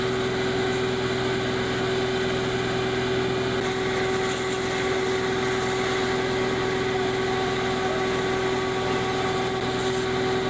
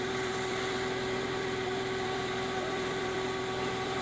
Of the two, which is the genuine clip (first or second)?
first